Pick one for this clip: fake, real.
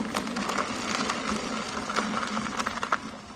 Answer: real